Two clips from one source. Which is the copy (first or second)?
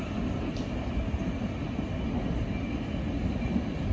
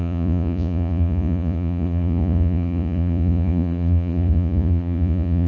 second